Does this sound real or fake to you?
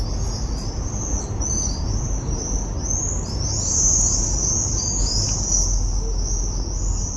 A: real